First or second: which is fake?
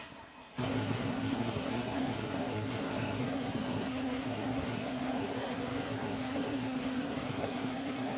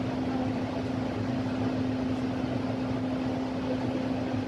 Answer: first